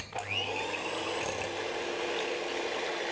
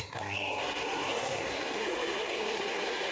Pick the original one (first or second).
first